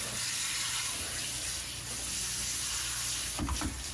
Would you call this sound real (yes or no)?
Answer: yes